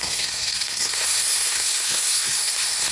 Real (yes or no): no